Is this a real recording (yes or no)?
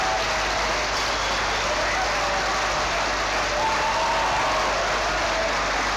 yes